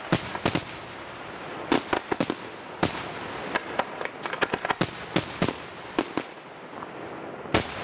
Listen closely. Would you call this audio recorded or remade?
recorded